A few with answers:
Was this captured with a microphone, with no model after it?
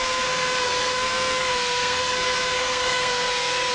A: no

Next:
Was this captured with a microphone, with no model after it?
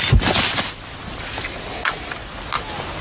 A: yes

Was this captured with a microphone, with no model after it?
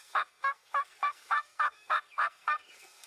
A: no